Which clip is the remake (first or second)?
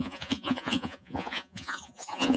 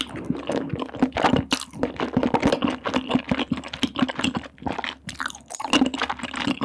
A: first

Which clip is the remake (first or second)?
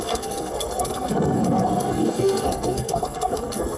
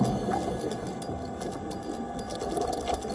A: first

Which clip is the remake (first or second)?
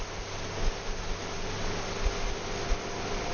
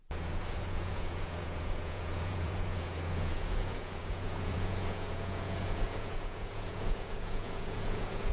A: second